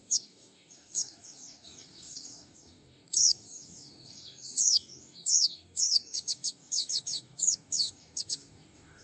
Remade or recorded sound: remade